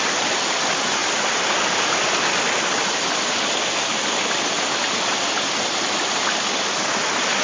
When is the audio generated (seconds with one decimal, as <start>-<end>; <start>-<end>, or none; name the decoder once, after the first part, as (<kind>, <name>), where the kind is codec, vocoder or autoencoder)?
none